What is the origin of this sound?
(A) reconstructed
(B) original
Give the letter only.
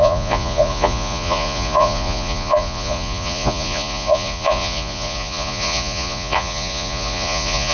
A